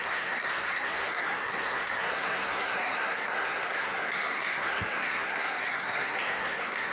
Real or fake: fake